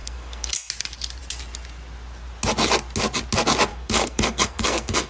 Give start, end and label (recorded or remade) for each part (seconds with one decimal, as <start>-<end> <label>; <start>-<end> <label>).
0.0-0.7 remade; 0.7-3.7 recorded; 3.7-5.1 remade